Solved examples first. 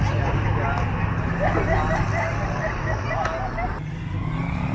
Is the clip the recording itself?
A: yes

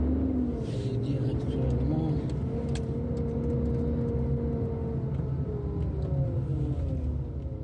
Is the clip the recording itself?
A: yes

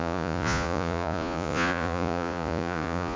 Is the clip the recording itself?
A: no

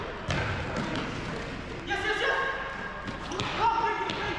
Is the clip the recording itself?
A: yes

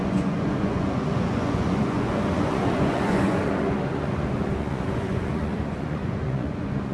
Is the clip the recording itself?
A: no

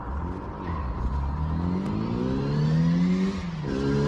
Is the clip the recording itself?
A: yes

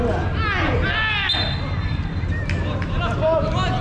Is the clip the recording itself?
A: yes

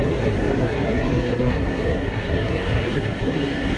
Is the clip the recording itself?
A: no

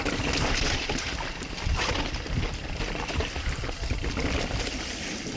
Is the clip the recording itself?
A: yes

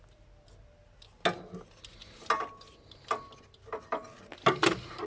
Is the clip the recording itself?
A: yes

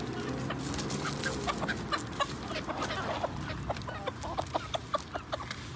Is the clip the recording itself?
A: yes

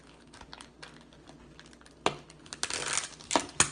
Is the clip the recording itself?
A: yes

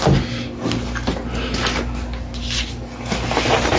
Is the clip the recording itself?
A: yes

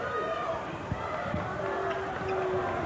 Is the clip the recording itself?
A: yes